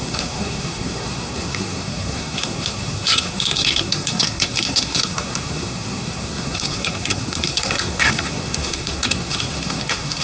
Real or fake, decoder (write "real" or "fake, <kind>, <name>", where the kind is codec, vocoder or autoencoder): fake, codec, SNAC